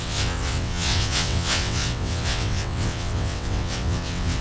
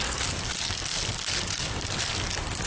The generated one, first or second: first